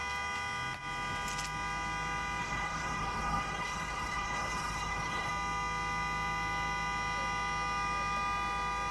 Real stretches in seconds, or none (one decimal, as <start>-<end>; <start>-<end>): 0.0-2.4; 5.3-8.9